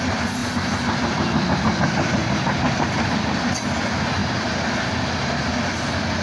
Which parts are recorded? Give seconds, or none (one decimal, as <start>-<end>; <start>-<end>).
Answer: 0.0-0.4; 3.1-6.2